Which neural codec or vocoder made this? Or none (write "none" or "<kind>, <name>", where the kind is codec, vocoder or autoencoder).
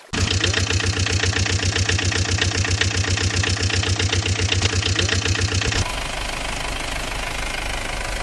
none